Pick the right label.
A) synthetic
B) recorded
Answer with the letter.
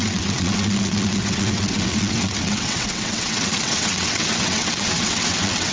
A